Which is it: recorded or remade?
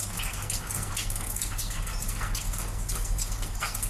remade